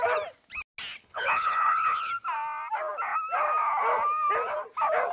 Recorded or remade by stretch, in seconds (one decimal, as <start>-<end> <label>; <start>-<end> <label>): 0.0-1.0 recorded; 1.0-2.1 remade; 2.1-5.1 recorded

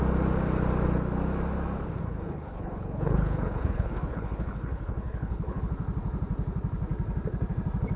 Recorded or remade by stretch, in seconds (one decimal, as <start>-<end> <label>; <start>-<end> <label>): 0.0-2.0 recorded; 2.0-5.6 remade; 5.6-8.0 recorded